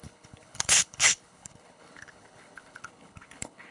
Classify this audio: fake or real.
fake